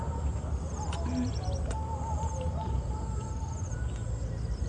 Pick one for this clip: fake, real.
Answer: fake